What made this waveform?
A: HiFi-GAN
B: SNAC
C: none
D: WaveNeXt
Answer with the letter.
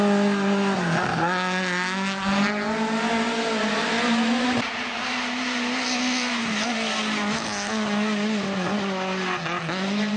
C